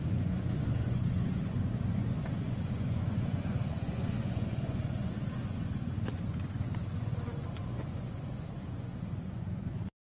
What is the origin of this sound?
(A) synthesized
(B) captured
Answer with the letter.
A